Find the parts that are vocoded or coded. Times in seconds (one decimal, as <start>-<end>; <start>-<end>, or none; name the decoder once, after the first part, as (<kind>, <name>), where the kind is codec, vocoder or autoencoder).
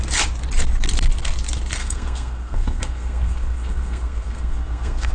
1.8-5.1 (codec, SNAC)